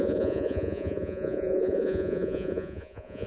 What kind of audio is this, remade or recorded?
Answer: remade